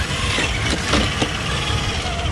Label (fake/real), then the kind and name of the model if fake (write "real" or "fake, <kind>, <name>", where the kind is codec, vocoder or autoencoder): real